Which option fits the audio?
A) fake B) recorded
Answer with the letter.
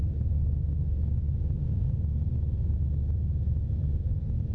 A